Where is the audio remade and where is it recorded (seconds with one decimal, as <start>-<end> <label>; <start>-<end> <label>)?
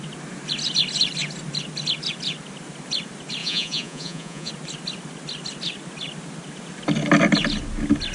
0.0-3.4 recorded; 3.4-4.5 remade; 4.5-8.1 recorded